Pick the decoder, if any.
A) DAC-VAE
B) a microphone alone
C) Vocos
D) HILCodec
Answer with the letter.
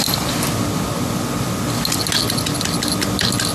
B